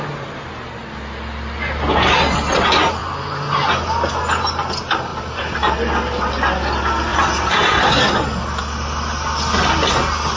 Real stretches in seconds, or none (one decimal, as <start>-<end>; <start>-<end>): 0.0-5.1; 5.7-7.1; 8.0-10.4